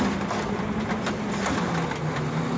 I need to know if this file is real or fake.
real